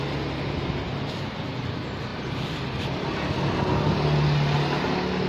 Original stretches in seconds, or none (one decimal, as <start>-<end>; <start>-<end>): 0.0-5.3